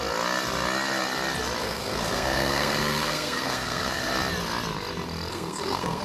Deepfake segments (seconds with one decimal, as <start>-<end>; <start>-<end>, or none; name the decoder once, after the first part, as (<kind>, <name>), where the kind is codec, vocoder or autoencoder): 1.6-4.1 (codec, SNAC); 5.3-6.0

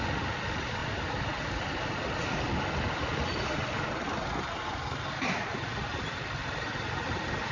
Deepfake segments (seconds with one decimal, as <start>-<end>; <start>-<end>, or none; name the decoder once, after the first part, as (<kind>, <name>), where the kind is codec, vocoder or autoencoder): none

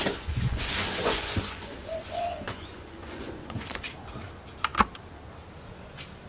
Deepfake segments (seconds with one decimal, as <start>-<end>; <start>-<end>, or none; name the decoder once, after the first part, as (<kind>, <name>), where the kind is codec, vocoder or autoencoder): 0.0-3.8 (vocoder, Vocos)

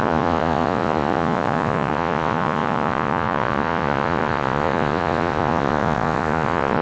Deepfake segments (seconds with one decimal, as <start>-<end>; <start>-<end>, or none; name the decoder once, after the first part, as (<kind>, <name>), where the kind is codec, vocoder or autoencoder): 0.0-6.8 (vocoder, Vocos)

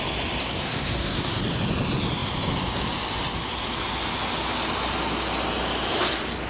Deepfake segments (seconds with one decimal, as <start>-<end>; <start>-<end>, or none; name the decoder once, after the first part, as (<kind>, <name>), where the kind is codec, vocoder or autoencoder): 0.4-1.4 (codec, SNAC)

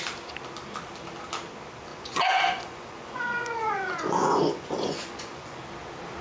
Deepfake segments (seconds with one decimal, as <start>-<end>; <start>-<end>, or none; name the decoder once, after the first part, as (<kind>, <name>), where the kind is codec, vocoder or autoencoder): 1.9-5.6 (vocoder, Vocos)